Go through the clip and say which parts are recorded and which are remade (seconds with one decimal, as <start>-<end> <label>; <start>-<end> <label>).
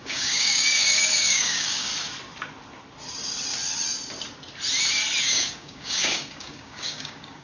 0.0-1.9 remade; 1.9-5.2 recorded; 5.2-7.4 remade